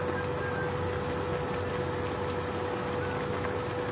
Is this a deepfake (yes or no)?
no